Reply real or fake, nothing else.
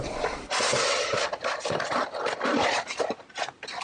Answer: real